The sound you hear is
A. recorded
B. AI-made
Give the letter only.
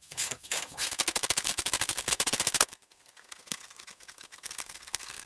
B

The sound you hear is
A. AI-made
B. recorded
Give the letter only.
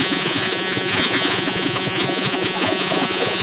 A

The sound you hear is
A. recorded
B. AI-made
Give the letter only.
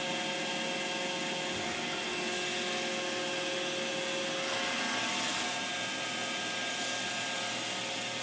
A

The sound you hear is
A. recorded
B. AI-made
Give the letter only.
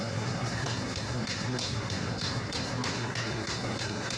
B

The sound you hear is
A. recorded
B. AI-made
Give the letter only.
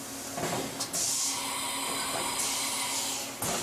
A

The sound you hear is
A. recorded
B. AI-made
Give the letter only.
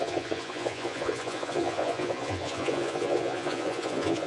B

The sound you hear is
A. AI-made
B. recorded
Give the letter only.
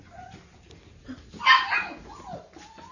B